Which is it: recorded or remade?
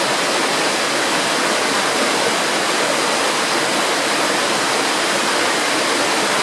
recorded